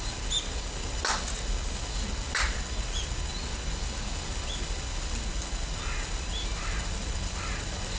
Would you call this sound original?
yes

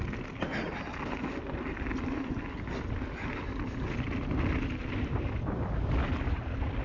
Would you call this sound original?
yes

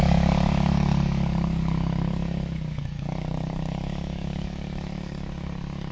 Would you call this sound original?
no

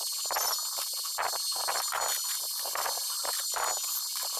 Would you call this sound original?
yes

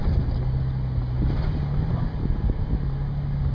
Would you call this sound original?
yes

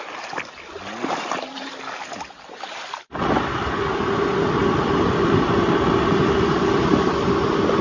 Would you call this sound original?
yes